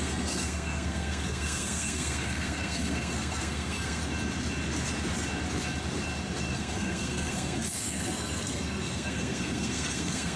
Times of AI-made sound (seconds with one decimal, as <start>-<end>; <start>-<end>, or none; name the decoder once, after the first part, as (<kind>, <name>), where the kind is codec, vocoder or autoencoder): 0.0-4.0 (codec, SNAC); 6.5-10.4

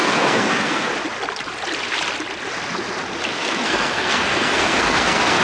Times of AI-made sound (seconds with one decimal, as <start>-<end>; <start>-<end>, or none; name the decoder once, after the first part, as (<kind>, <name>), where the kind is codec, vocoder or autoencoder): 0.0-0.9 (codec, SNAC); 3.3-5.4

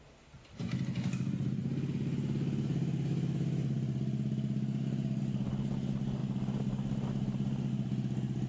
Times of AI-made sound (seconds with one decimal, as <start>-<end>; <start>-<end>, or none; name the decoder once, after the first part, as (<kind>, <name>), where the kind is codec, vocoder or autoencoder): none

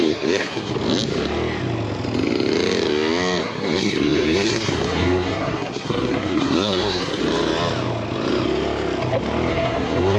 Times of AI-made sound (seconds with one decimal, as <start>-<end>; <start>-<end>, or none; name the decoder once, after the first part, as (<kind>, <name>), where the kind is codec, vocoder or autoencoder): 0.0-0.7 (codec, SNAC); 3.4-7.2; 9.5-10.2